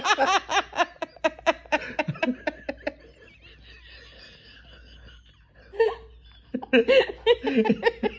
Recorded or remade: recorded